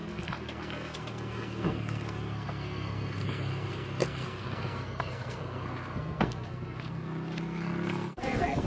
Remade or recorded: remade